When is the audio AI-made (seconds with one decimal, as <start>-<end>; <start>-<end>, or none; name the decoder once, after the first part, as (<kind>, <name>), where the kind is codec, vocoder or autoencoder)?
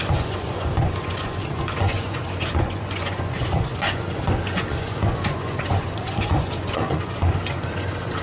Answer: 0.0-8.2 (vocoder, Vocos)